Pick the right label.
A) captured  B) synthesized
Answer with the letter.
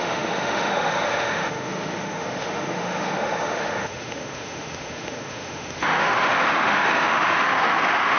B